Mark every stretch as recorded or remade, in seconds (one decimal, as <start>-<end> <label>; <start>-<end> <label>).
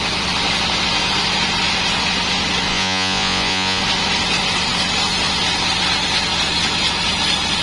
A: 0.0-2.7 recorded; 2.7-3.8 remade; 3.8-7.6 recorded